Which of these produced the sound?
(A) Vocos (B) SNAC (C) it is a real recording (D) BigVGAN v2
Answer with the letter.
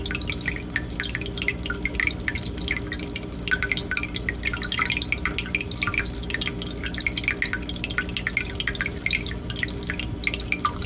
C